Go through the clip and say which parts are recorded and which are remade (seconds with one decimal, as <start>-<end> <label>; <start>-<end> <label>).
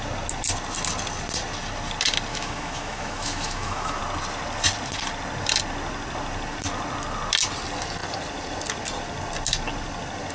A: 0.0-2.3 recorded; 2.3-4.0 remade; 4.0-10.3 recorded